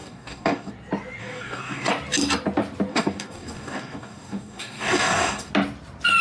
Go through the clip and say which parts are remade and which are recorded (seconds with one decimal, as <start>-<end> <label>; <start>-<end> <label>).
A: 0.0-0.7 remade; 0.7-1.2 recorded; 1.2-1.9 remade; 1.9-2.9 recorded; 2.9-5.5 remade; 5.5-6.2 recorded